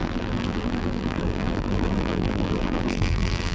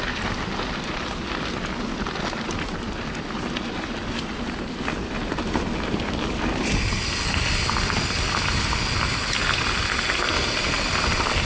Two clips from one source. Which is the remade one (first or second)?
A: first